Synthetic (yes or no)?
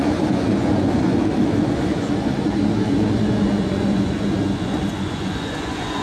yes